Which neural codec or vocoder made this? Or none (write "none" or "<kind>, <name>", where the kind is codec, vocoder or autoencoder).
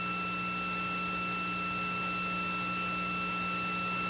none